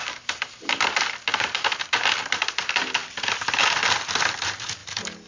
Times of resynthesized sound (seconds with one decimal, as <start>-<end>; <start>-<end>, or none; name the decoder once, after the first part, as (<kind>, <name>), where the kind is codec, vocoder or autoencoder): 0.0-0.7 (vocoder, BigVGAN v2); 1.3-1.8; 4.8-5.3